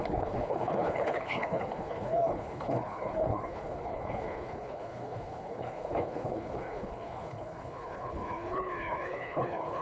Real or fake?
fake